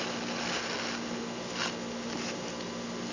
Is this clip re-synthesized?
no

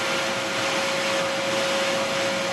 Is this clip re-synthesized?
no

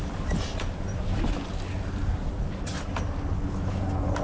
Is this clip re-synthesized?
no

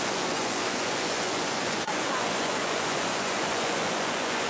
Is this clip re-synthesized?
yes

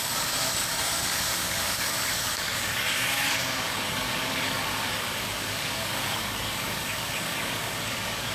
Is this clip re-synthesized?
yes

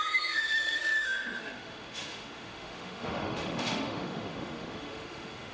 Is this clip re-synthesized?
yes